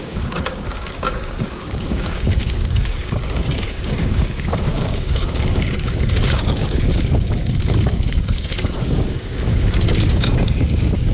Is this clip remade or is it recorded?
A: remade